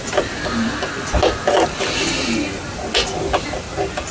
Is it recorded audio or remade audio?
recorded